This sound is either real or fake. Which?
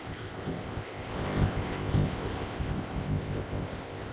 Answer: fake